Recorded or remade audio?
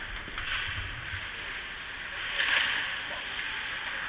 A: recorded